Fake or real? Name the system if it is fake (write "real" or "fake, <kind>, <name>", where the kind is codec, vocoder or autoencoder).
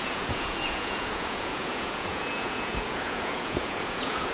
fake, vocoder, Vocos